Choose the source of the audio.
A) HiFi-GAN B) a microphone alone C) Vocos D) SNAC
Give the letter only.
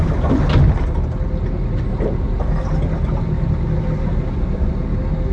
B